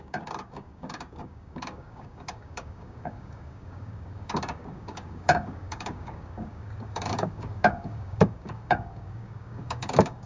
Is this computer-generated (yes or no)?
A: yes